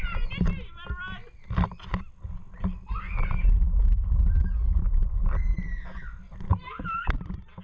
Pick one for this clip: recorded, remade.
recorded